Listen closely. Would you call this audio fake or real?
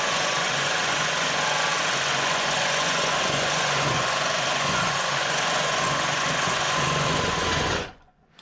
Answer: fake